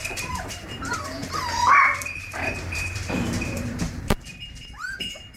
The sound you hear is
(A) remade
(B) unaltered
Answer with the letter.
A